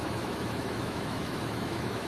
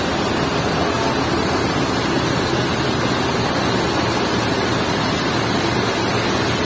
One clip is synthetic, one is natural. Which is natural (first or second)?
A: second